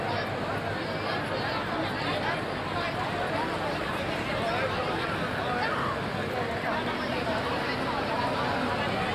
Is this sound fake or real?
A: real